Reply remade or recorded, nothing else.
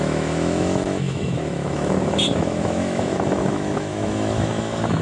remade